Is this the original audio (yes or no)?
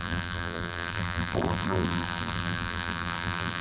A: no